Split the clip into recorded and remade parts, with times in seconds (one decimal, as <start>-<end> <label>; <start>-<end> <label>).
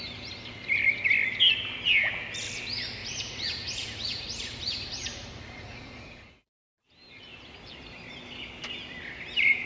0.0-3.0 recorded; 3.0-6.7 remade; 6.7-9.7 recorded